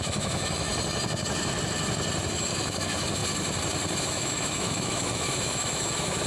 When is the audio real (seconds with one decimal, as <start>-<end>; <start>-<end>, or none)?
0.7-2.3; 3.2-4.0